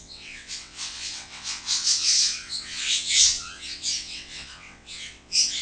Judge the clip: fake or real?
fake